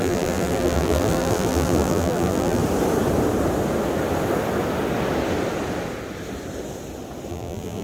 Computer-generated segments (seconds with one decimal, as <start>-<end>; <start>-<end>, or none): 0.0-2.6; 7.3-7.8